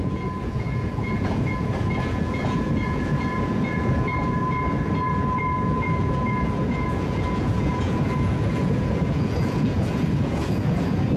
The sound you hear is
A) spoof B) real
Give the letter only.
A